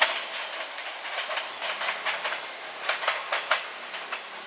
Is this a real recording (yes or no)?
yes